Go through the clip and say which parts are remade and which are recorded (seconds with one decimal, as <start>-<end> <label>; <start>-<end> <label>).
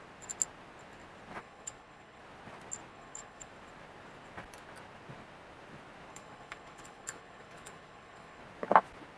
0.0-1.4 recorded; 1.4-2.2 remade; 2.2-2.9 recorded; 2.9-3.5 remade; 3.5-6.1 recorded; 6.1-8.4 remade; 8.4-9.2 recorded